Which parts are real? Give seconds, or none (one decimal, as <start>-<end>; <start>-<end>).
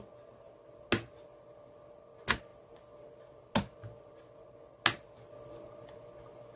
0.0-6.6